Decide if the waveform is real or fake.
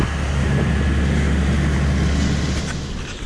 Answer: real